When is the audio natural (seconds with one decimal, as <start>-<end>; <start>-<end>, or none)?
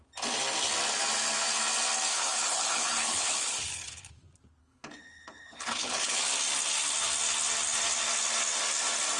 0.0-2.1; 4.1-4.6; 6.2-9.2